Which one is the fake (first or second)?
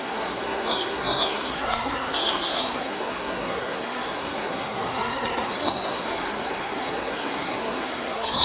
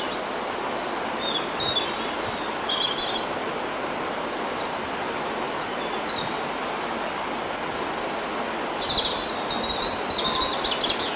first